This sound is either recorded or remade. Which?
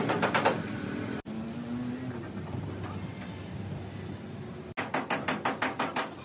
recorded